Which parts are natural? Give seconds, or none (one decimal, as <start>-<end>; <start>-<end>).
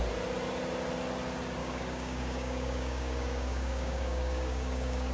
0.0-1.6